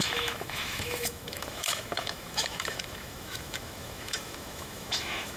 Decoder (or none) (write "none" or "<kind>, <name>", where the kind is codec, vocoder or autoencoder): autoencoder, DAC-VAE